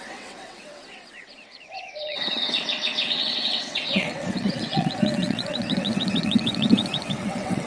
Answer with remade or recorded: remade